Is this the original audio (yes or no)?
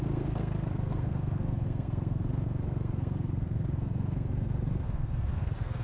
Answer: no